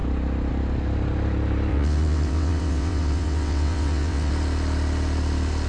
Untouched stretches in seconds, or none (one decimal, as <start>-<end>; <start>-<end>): 0.0-1.7; 4.3-5.7